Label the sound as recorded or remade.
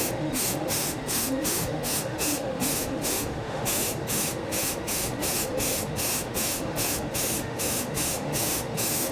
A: remade